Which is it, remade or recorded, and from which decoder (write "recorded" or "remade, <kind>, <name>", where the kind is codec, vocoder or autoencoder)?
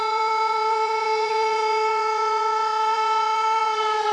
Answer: remade, vocoder, Vocos